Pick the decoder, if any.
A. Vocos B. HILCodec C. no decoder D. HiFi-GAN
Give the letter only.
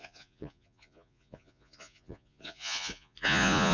A